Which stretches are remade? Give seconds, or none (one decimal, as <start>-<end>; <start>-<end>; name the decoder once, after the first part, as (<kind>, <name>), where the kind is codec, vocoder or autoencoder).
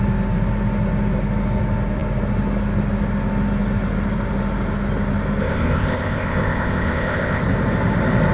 5.4-7.4 (codec, ZipCodec)